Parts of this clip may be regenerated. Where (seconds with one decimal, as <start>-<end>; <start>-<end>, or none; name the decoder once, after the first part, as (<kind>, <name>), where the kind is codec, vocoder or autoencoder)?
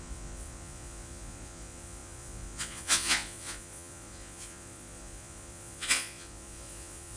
0.0-7.2 (vocoder, Vocos)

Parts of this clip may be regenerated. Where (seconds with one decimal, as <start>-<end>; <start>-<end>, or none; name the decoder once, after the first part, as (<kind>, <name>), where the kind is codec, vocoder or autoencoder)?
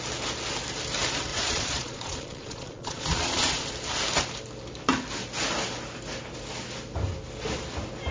1.3-3.7 (vocoder, Vocos)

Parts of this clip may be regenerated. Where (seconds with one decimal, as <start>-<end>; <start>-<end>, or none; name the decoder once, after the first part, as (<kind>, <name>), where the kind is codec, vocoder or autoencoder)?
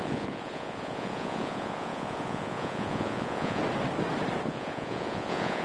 0.0-3.6 (vocoder, Vocos); 4.5-5.6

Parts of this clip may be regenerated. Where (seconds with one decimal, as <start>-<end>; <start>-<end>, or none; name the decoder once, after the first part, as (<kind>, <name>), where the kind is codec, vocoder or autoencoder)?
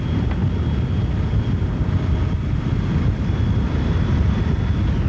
none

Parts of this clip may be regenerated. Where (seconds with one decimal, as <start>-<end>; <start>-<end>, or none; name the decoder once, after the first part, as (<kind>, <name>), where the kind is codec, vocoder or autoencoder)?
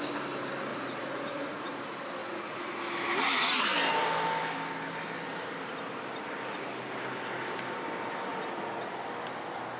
0.7-1.8 (vocoder, Vocos); 2.2-2.8; 8.3-8.9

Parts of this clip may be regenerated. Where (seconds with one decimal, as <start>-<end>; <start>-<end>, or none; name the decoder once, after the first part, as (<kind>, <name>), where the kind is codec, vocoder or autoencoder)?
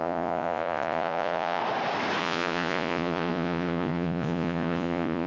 0.0-1.6 (vocoder, Vocos); 2.2-5.3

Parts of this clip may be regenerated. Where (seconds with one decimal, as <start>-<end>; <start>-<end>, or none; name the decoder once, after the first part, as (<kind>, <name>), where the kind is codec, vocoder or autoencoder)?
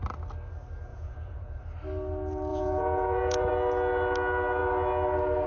0.9-1.6 (vocoder, Vocos); 2.5-3.5